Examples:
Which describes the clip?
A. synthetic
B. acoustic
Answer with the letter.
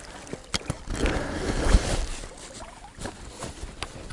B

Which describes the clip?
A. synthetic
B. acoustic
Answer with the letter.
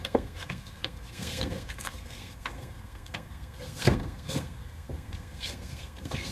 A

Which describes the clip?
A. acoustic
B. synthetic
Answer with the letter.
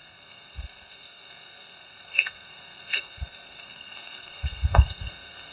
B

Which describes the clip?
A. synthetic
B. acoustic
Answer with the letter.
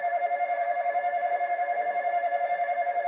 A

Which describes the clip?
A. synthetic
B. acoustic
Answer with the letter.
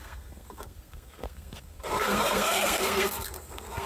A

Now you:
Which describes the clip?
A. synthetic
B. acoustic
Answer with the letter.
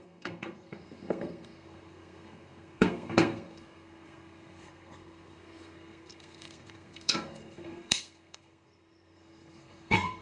A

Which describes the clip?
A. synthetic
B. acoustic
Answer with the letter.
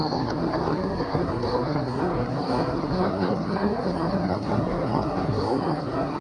A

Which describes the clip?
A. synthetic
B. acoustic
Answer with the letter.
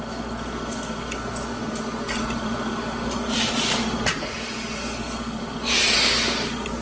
B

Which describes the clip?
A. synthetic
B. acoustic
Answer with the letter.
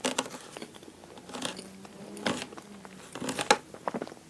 B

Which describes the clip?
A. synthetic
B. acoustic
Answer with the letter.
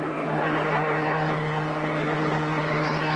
A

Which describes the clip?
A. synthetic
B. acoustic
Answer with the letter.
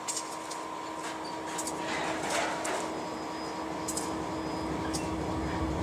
B